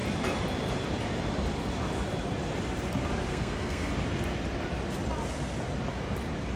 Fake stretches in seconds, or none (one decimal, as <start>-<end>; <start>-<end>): 3.3-3.9